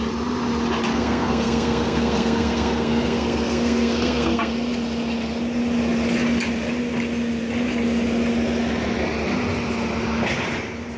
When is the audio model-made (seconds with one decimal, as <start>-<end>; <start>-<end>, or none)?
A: 0.9-4.5